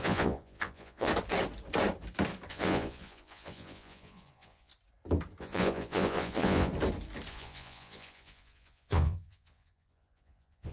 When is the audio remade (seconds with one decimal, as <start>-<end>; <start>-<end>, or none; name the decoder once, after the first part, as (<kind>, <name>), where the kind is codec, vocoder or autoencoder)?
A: 0.0-1.1 (vocoder, Vocos); 2.5-4.7; 5.4-6.7; 7.3-10.7